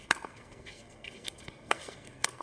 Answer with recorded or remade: remade